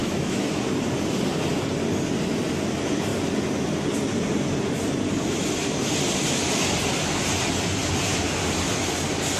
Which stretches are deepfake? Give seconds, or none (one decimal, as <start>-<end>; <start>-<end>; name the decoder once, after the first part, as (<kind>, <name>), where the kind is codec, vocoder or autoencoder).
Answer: 0.0-0.6 (autoencoder, DAC-VAE)